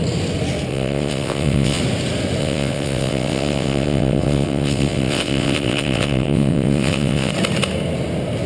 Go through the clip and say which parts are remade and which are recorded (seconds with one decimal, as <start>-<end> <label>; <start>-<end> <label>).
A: 0.0-0.7 recorded; 0.7-1.8 remade; 1.8-2.4 recorded; 2.4-7.3 remade; 7.3-8.5 recorded